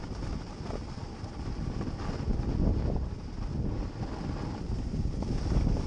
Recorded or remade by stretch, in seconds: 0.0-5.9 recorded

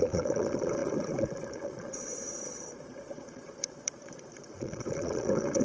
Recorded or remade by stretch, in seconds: 0.0-5.6 remade

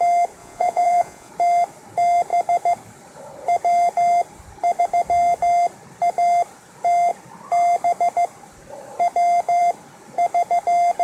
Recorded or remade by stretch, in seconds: 0.0-0.4 recorded; 0.4-1.3 remade; 1.3-11.0 recorded

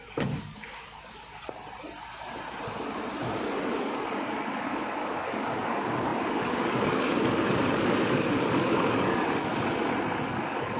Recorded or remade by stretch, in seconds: 0.0-1.4 remade; 1.4-3.8 recorded; 3.8-9.5 remade; 9.5-10.3 recorded; 10.3-10.8 remade

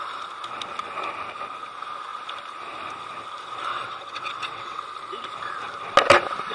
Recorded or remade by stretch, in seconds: 0.0-3.7 recorded; 3.7-4.8 remade; 4.8-6.5 recorded

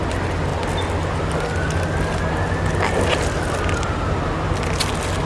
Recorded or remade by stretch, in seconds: 0.0-5.3 recorded